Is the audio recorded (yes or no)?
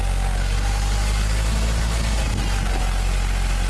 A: yes